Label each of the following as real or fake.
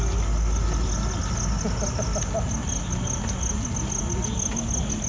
real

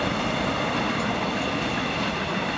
real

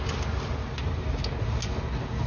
real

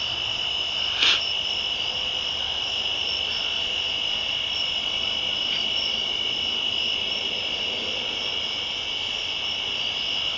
real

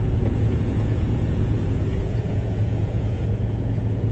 fake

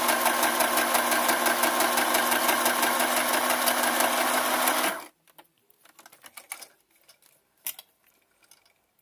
real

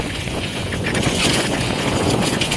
fake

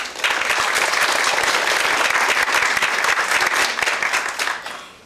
real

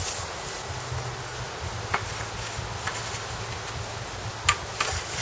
real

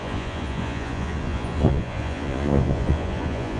fake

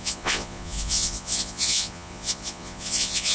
fake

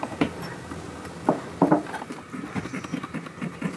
real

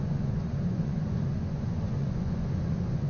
fake